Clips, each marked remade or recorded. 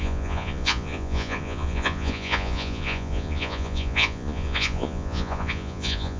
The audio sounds remade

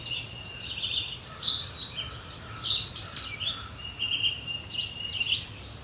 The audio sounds remade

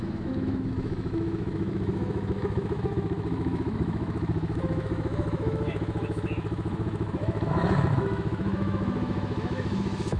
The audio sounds remade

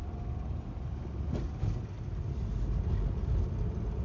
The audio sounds recorded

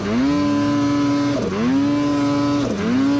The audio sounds recorded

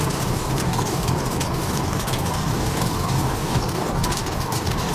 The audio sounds remade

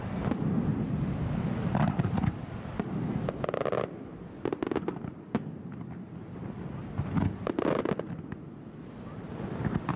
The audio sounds recorded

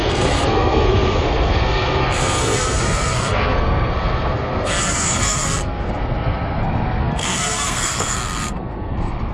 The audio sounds remade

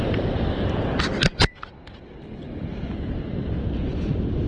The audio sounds remade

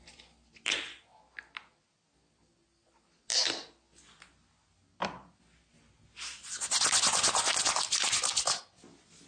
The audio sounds recorded